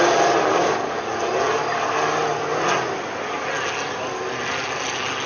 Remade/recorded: recorded